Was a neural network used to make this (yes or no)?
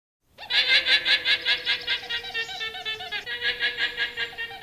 no